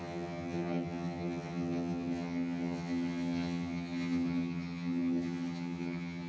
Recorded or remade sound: remade